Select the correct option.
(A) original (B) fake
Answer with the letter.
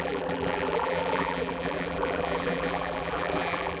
B